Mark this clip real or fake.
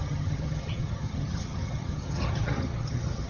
fake